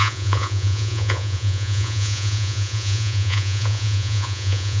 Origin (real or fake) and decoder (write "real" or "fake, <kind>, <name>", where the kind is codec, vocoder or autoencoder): fake, vocoder, Vocos